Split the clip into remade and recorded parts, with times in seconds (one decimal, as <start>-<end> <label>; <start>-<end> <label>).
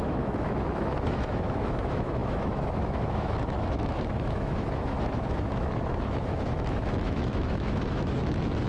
0.0-8.7 remade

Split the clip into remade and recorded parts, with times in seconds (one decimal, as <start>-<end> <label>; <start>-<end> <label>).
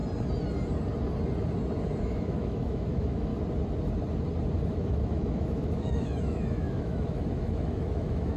0.0-2.0 recorded; 2.0-3.3 remade; 3.3-4.7 recorded; 4.7-8.4 remade